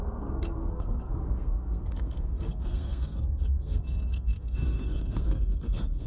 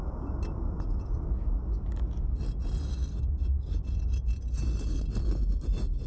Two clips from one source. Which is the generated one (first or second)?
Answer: first